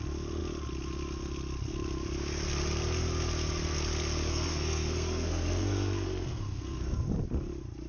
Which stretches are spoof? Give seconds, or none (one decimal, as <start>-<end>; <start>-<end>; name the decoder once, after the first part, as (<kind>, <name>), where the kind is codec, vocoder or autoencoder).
4.3-7.0 (codec, SNAC)